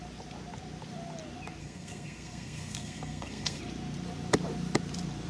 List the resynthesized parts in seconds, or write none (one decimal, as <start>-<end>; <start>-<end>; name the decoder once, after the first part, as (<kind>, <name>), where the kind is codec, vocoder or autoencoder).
1.6-3.6 (codec, SNAC)